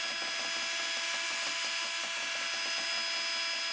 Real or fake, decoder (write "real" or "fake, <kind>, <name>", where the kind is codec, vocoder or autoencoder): real